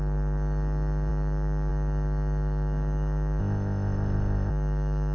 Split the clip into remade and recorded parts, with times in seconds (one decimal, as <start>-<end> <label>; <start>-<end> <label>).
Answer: 0.0-3.4 recorded; 3.4-4.5 remade; 4.5-5.1 recorded